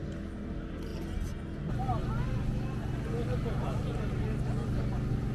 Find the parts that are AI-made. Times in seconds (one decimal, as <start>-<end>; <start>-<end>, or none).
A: none